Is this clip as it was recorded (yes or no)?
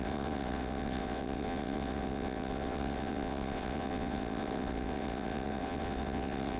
no